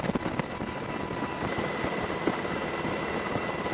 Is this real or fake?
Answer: real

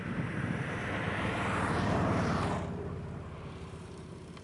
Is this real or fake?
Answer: fake